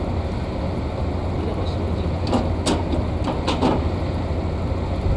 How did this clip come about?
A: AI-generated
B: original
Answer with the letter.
B